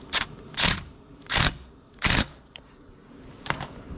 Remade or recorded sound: remade